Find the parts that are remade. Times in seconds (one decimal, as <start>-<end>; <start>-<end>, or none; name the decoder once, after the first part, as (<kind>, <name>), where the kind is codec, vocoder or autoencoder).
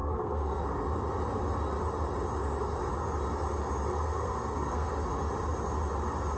0.0-0.6 (codec, SNAC); 3.9-4.9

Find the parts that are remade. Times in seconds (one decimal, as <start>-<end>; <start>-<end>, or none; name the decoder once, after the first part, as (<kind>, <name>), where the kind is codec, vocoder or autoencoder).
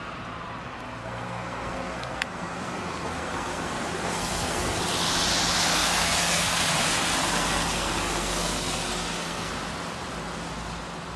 1.0-4.8 (codec, SNAC); 5.7-6.7; 7.2-9.5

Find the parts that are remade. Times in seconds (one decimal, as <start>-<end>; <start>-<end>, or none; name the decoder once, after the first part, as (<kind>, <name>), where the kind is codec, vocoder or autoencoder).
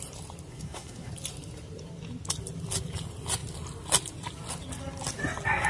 0.5-1.1 (codec, SNAC)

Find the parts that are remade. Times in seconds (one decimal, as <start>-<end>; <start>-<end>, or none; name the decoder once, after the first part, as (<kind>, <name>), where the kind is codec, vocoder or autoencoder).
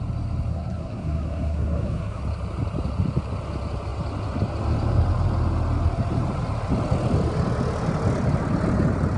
0.5-2.2 (codec, SNAC)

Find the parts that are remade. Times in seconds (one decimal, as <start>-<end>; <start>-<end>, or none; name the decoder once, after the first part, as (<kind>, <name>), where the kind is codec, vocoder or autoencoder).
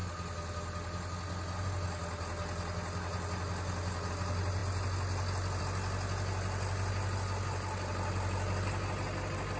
none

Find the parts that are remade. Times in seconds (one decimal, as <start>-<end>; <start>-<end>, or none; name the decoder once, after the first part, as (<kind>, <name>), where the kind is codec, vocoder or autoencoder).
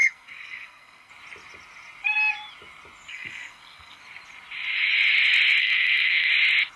0.0-1.1 (codec, SNAC); 3.1-4.0; 5.6-6.3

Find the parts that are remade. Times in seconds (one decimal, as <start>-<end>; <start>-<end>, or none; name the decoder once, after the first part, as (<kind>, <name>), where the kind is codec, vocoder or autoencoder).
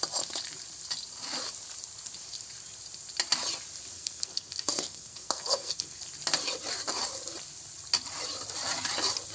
3.9-6.0 (codec, SNAC)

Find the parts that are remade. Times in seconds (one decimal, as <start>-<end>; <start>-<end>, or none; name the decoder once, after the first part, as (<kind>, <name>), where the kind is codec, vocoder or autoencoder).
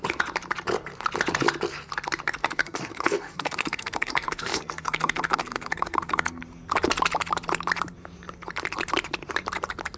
2.4-6.4 (codec, SNAC)